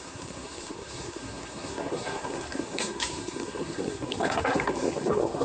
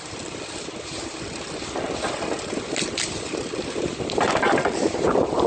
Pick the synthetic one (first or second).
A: first